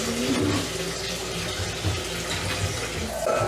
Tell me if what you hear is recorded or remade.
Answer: recorded